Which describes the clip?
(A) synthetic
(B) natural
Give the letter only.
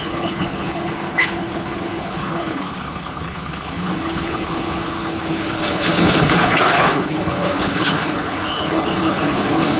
A